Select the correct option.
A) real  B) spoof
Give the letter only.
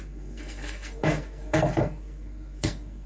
B